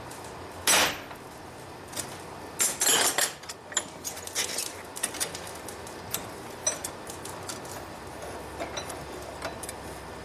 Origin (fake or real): real